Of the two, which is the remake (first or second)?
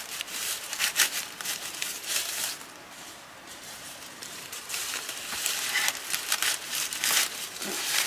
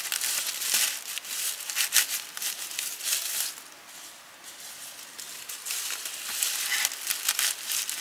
first